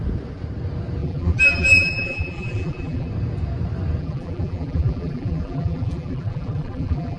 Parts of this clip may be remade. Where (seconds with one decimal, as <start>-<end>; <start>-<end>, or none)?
1.0-3.1; 4.0-7.2